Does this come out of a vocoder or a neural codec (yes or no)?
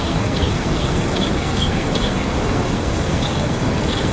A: yes